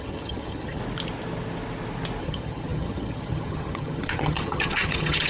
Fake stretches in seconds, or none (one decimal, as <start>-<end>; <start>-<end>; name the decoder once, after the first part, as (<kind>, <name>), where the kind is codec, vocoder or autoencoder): 0.0-0.8 (vocoder, HiFi-GAN); 2.2-5.3